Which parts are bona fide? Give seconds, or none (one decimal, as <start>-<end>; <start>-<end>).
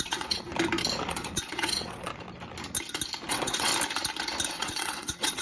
0.5-1.1; 2.1-3.3; 3.7-4.5